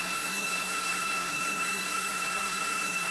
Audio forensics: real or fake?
fake